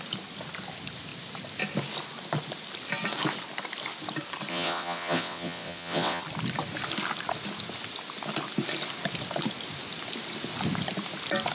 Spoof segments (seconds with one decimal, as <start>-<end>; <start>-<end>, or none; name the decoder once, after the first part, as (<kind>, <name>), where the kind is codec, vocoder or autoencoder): 4.5-6.2 (vocoder, WaveNeXt)